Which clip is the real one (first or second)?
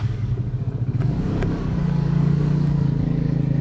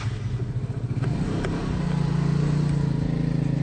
second